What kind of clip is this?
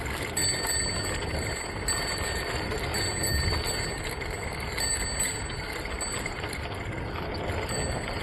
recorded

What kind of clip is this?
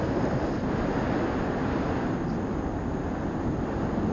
recorded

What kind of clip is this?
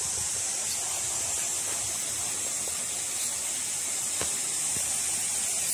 recorded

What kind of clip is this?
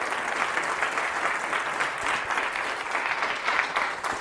recorded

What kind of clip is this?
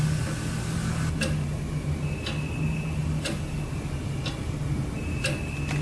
recorded